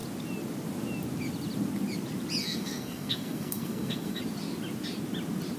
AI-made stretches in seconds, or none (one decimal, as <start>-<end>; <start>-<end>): 2.4-4.2